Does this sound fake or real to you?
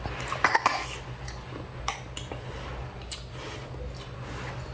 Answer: real